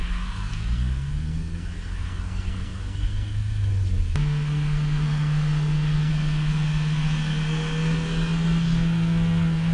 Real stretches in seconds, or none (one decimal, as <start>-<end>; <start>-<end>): none